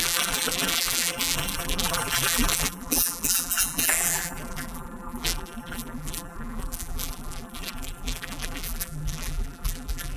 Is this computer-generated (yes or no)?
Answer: yes